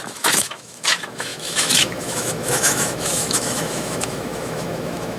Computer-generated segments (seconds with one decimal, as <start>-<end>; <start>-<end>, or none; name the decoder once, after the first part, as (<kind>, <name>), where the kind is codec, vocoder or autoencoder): 0.0-5.2 (autoencoder, DAC-VAE)